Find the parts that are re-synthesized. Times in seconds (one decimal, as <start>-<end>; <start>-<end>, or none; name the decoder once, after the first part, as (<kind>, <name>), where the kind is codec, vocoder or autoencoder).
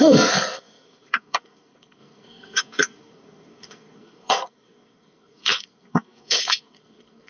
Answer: 0.0-7.3 (codec, SNAC)